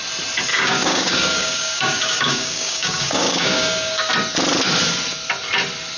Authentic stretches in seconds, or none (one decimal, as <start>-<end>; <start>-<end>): 0.0-0.5; 4.1-6.0